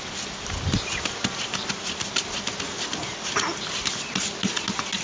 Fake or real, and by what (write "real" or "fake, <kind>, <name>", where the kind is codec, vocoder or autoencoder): real